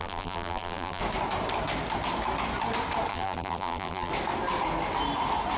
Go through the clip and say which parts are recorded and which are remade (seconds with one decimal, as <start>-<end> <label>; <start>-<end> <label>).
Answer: 0.0-1.0 remade; 1.0-3.1 recorded; 3.1-4.1 remade; 4.1-5.6 recorded